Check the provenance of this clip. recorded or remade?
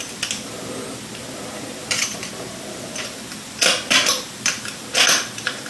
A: remade